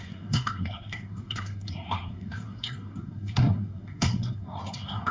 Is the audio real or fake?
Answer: fake